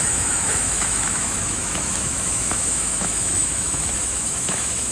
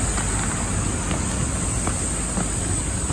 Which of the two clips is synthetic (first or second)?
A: first